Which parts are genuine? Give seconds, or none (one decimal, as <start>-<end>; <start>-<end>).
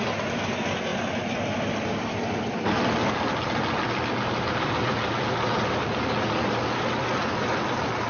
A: 0.0-8.1